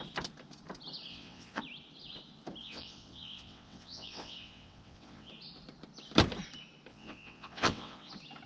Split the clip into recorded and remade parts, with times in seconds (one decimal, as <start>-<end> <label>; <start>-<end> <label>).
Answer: 0.0-1.1 recorded; 1.1-1.6 remade; 1.6-2.6 recorded; 2.6-5.3 remade; 5.3-6.9 recorded; 6.9-8.1 remade; 8.1-8.5 recorded